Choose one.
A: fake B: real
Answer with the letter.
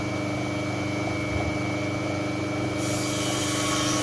B